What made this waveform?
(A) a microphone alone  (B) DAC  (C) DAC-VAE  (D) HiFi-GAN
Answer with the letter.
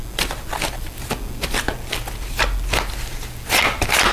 A